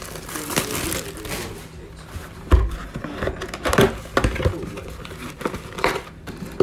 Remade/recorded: recorded